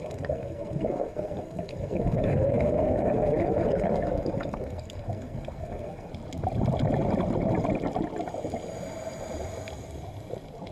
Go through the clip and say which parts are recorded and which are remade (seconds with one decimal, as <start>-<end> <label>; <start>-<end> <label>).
0.0-6.1 remade; 6.1-10.7 recorded